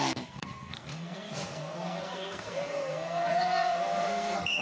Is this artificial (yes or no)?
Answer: yes